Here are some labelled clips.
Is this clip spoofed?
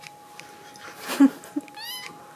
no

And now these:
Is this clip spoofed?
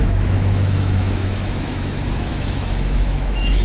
yes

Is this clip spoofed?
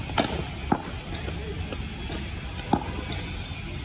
no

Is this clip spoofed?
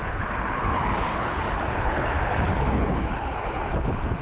yes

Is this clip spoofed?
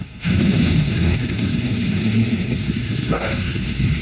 yes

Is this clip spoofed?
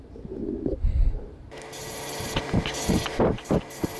no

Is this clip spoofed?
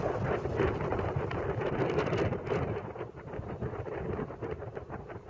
no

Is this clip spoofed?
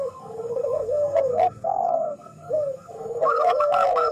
yes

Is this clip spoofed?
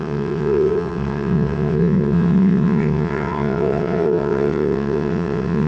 yes